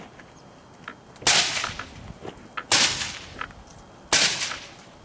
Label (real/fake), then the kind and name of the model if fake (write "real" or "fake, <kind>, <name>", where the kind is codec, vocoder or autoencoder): real